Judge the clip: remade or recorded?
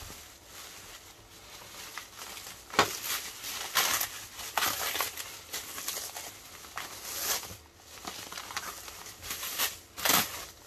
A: recorded